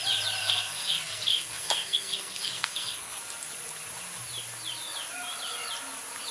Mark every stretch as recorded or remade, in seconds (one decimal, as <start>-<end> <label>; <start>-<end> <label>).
0.0-0.4 recorded; 0.4-3.2 remade; 3.2-6.3 recorded